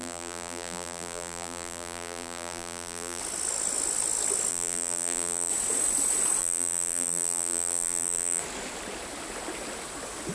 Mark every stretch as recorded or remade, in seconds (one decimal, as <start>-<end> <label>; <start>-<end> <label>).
0.0-3.2 remade; 3.2-4.5 recorded; 4.5-5.5 remade; 5.5-6.4 recorded; 6.4-8.4 remade; 8.4-10.3 recorded

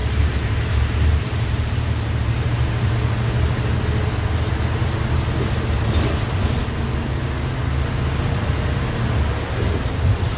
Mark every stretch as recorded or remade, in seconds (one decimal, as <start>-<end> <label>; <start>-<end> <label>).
0.0-2.9 remade; 2.9-10.4 recorded

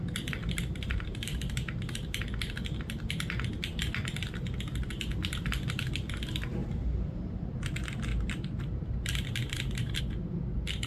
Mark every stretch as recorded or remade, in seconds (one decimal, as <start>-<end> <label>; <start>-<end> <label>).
0.0-0.4 recorded; 0.4-2.2 remade; 2.2-6.6 recorded; 6.6-7.5 remade; 7.5-8.1 recorded; 8.1-10.0 remade; 10.0-10.9 recorded

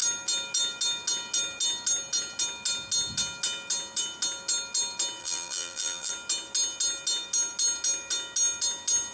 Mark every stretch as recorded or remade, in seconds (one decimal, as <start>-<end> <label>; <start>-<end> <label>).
0.0-5.2 recorded; 5.2-6.1 remade; 6.1-9.1 recorded

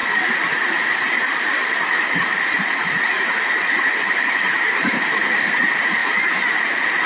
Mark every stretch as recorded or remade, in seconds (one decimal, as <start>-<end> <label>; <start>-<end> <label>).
0.0-6.0 remade; 6.0-6.6 recorded; 6.6-7.1 remade

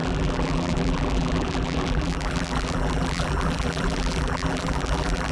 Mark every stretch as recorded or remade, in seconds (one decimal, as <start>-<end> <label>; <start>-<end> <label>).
0.0-5.3 remade

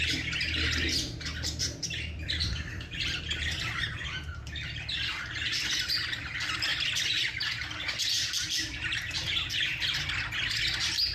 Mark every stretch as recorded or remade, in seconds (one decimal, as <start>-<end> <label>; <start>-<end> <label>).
0.0-1.3 recorded; 1.3-2.9 remade; 2.9-4.3 recorded; 4.3-5.2 remade; 5.2-11.1 recorded